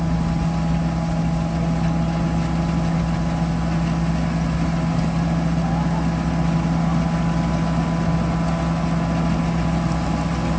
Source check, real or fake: real